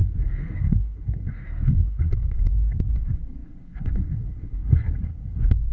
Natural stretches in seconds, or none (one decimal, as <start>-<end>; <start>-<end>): none